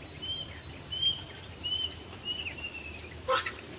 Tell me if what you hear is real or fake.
fake